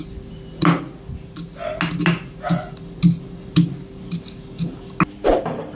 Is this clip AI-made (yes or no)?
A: no